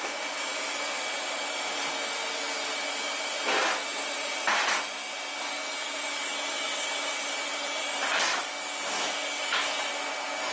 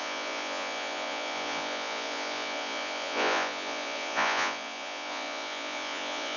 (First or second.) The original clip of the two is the first